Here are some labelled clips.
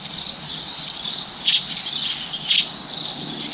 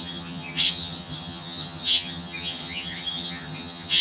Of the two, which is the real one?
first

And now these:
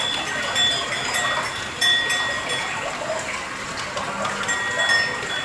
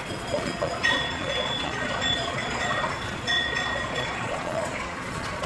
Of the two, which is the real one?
first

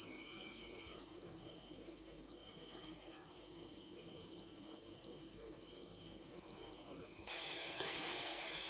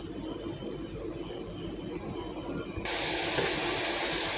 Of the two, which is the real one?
second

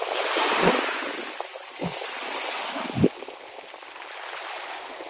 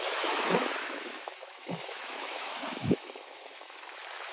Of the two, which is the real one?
first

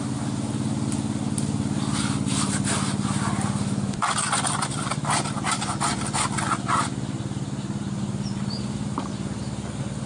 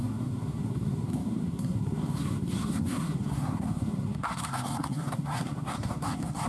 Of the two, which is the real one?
first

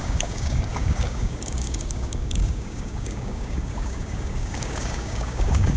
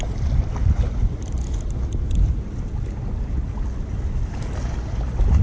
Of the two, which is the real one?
second